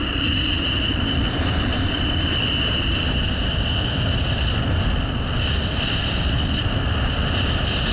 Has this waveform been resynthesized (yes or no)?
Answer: yes